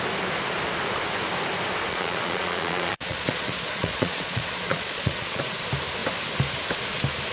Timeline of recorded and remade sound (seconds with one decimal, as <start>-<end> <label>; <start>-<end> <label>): 0.0-1.9 recorded; 1.9-5.4 remade; 5.4-7.3 recorded

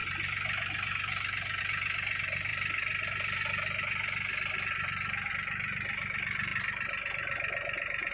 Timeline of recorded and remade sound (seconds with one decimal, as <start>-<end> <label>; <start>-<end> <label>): 0.0-8.1 recorded

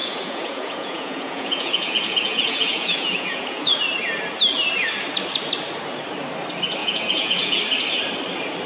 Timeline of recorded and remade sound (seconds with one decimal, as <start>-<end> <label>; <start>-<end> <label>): 0.0-3.8 remade; 3.8-6.8 recorded; 6.8-7.6 remade; 7.6-8.7 recorded